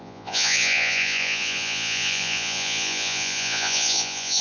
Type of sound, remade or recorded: remade